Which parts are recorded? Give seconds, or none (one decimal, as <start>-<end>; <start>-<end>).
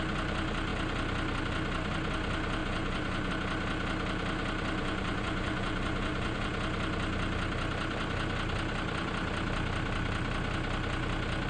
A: 0.0-2.6; 3.3-4.8; 6.5-11.5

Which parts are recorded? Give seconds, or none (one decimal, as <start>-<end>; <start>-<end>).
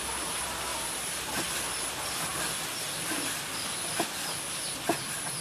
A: 0.0-0.7; 1.2-2.3; 3.9-5.4